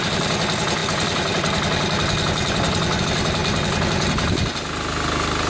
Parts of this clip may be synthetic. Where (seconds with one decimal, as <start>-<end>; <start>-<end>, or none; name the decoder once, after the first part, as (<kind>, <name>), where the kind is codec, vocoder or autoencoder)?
none